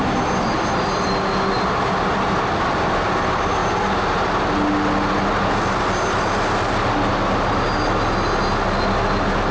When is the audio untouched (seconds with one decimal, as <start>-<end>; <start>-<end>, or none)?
0.0-9.5